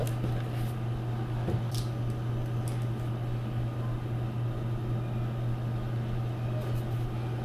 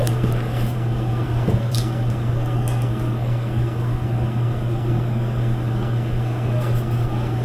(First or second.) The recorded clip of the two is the first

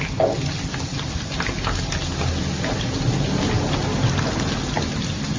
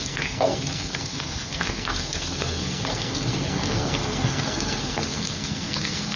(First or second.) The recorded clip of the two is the first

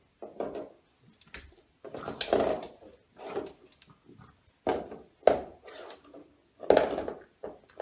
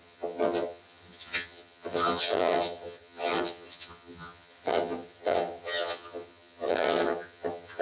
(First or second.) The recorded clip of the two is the first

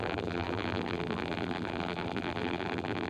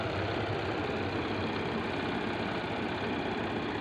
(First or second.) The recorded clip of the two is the second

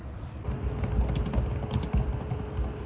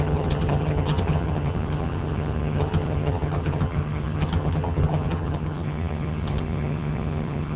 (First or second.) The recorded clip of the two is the first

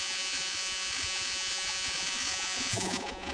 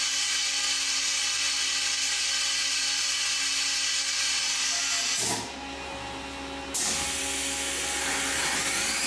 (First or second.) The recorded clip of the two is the second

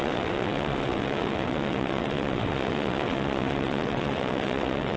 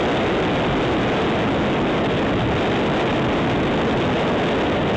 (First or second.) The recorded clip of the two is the second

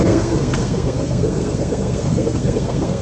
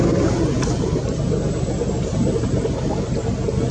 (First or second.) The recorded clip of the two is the second